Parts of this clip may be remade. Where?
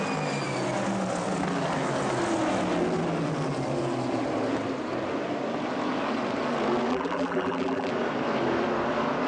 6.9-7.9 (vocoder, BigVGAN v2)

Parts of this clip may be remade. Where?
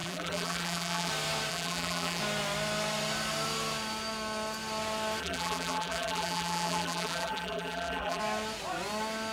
0.0-1.1 (vocoder, BigVGAN v2); 1.5-2.2; 5.2-8.2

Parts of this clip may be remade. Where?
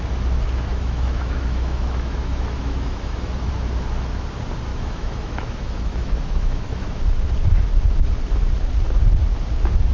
0.7-3.5 (autoencoder, DAC-VAE); 4.7-7.0